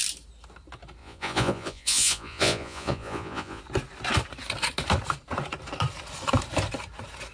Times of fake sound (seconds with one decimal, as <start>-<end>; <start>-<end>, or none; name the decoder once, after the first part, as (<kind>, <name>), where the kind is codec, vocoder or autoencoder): 1.0-3.6 (vocoder, Vocos)